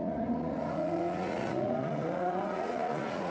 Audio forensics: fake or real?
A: fake